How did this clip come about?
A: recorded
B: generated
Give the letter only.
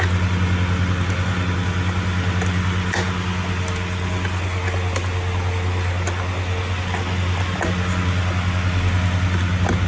A